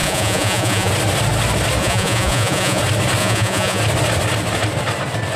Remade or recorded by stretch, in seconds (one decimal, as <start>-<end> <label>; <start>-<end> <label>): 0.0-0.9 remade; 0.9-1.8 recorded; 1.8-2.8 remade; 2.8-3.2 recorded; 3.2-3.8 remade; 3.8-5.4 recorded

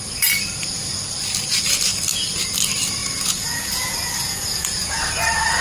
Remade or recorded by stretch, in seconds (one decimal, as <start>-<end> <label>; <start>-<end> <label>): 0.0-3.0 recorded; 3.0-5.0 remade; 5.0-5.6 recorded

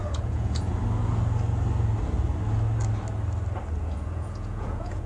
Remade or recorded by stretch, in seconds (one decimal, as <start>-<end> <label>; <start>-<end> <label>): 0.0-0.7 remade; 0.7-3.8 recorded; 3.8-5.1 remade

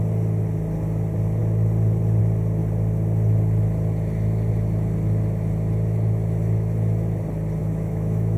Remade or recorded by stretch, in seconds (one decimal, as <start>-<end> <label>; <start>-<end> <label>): 0.0-7.6 recorded; 7.6-8.4 remade